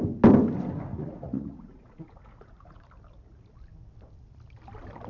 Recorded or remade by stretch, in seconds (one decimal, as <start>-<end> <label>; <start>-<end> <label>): 0.0-0.9 recorded; 0.9-2.9 remade; 2.9-5.1 recorded